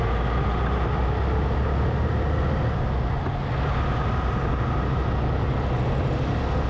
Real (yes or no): yes